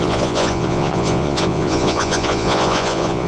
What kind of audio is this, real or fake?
fake